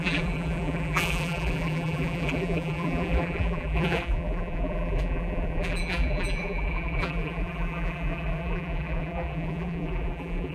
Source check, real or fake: fake